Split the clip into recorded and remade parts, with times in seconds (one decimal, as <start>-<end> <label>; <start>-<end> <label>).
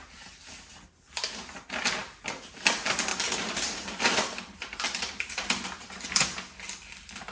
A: 0.0-3.1 recorded; 3.1-5.8 remade; 5.8-7.3 recorded